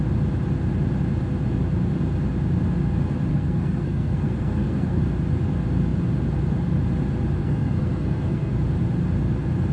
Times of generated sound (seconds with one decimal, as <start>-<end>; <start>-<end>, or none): 3.3-5.0; 7.4-8.5